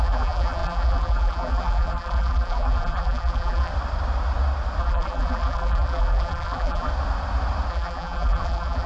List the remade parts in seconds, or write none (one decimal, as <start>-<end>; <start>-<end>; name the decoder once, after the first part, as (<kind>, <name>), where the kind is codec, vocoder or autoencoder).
0.0-3.7 (vocoder, BigVGAN v2); 4.8-6.9; 7.7-8.9